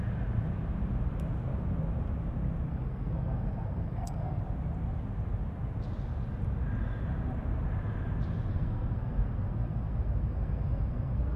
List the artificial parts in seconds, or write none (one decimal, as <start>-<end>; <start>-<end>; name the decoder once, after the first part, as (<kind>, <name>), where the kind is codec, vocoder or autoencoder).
2.7-4.4 (codec, SNAC); 8.5-11.4

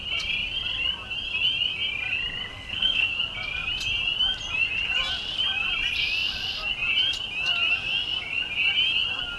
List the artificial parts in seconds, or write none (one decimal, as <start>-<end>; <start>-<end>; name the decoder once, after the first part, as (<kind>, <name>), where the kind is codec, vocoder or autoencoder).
2.5-3.1 (codec, SNAC)

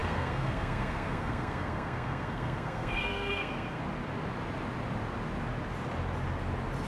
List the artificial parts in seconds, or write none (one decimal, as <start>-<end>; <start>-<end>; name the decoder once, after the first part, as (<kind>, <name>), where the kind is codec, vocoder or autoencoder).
0.0-3.8 (codec, SNAC)